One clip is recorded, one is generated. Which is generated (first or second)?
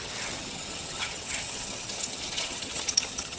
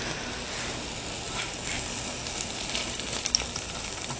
first